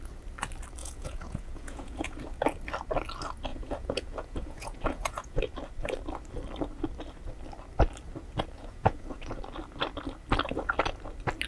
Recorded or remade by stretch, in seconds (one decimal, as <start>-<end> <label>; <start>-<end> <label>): 0.0-0.8 recorded; 0.8-2.2 remade; 2.2-3.5 recorded; 3.5-5.4 remade; 5.4-8.6 recorded; 8.6-9.4 remade; 9.4-11.5 recorded